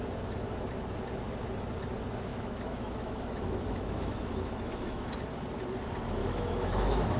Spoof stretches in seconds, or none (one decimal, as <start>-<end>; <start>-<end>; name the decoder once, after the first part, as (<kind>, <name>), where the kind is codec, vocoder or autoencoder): 2.3-5.1 (autoencoder, DAC-VAE); 6.2-7.2